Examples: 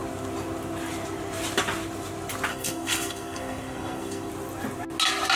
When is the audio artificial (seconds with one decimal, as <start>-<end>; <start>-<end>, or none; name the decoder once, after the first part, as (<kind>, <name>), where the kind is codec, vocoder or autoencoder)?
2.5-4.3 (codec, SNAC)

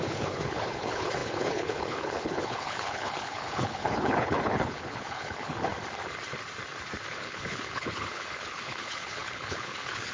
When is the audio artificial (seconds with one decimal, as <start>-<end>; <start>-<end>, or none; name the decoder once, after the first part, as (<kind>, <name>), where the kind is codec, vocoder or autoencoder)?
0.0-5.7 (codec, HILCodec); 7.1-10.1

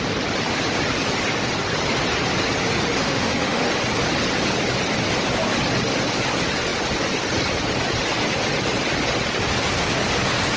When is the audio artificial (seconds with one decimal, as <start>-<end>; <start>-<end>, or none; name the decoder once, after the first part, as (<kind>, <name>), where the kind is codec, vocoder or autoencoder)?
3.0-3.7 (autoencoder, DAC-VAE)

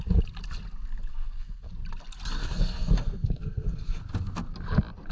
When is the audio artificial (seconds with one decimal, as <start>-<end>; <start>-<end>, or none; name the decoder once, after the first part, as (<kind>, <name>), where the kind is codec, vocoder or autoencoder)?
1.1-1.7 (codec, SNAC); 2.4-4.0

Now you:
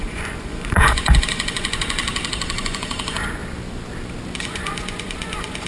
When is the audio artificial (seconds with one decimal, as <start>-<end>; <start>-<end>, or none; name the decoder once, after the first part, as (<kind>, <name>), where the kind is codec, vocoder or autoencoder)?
0.0-2.0 (vocoder, Vocos); 2.6-3.4; 4.4-5.7

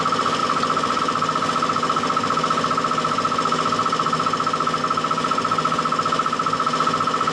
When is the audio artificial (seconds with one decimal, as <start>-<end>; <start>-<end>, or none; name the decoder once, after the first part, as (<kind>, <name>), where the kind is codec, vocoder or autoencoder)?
none